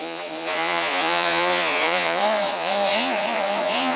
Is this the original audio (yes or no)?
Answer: no